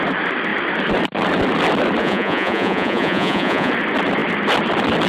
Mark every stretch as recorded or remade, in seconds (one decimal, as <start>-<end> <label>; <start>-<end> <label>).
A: 0.0-2.0 recorded; 2.0-3.7 remade; 3.7-5.1 recorded